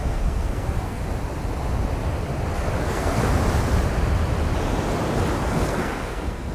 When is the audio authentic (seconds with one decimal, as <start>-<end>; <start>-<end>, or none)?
1.0-2.8; 3.2-5.4